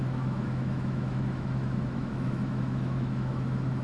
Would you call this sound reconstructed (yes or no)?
yes